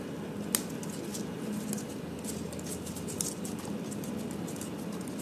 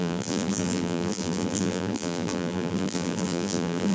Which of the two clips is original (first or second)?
first